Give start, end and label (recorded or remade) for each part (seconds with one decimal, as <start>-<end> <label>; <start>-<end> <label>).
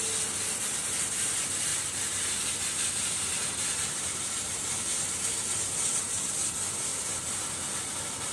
0.0-1.7 recorded; 1.7-3.3 remade; 3.3-6.9 recorded; 6.9-7.6 remade; 7.6-8.3 recorded